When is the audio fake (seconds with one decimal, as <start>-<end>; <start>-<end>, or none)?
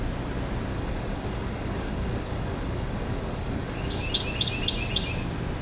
0.7-4.1